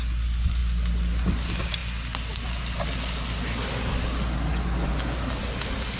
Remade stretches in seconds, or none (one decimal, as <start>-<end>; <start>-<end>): none